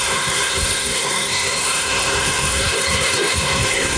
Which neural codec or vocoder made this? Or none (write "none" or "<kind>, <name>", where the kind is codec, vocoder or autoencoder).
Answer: codec, SNAC